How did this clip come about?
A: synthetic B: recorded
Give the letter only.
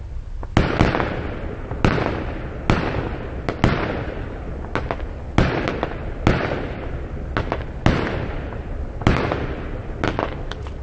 B